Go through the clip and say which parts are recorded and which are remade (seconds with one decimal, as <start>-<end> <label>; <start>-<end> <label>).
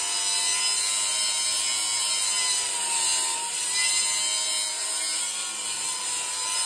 0.0-6.7 recorded